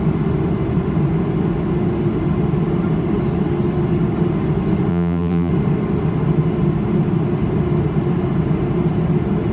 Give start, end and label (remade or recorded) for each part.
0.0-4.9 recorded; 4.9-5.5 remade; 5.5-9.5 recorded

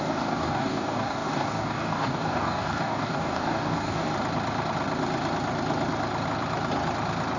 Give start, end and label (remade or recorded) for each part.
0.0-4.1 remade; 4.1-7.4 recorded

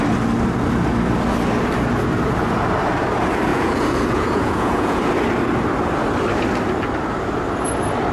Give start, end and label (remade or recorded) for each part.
0.0-3.5 recorded; 3.5-5.0 remade; 5.0-8.1 recorded

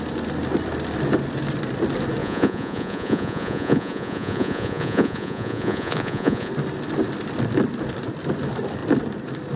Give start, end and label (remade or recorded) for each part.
0.0-2.2 recorded; 2.2-6.5 remade; 6.5-9.6 recorded

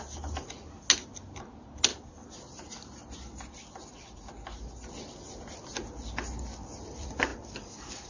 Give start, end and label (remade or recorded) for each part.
0.0-8.1 recorded

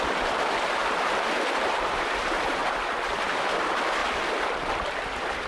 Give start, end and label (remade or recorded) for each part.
0.0-0.8 remade; 0.8-1.6 recorded; 1.6-2.6 remade; 2.6-3.5 recorded; 3.5-4.0 remade; 4.0-5.5 recorded

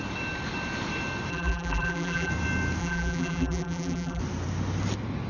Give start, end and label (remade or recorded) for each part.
0.0-1.3 recorded; 1.3-2.3 remade; 2.3-2.8 recorded; 2.8-4.2 remade; 4.2-5.3 recorded